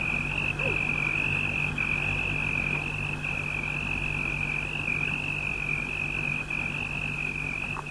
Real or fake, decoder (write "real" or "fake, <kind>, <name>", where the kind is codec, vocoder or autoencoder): real